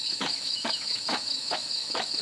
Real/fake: fake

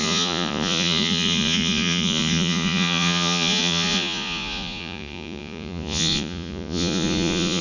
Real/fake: fake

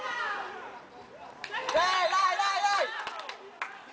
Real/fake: real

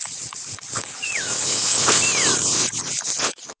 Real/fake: fake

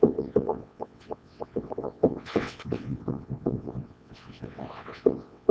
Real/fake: fake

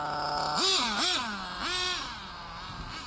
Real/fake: real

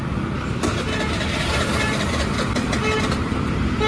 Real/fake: real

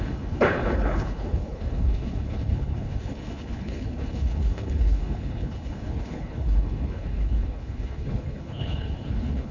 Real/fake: fake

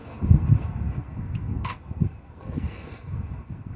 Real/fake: fake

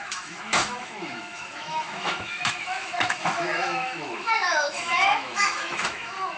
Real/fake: fake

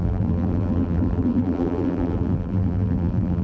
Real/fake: fake